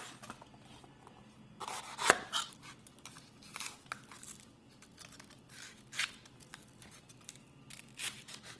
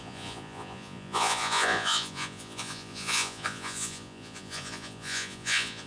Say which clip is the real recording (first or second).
first